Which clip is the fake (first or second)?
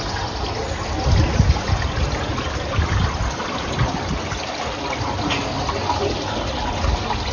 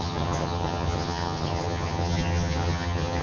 second